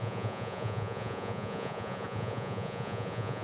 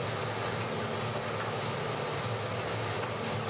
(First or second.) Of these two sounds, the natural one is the second